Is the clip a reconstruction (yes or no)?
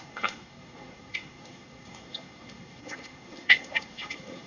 yes